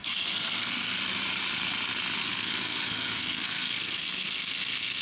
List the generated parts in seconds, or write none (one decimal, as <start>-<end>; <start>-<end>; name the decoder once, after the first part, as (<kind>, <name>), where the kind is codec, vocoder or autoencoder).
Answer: 0.0-0.7 (codec, SNAC); 2.2-5.0